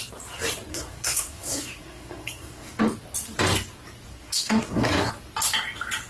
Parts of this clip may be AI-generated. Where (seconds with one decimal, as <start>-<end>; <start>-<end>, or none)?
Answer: 0.7-2.8; 4.1-5.1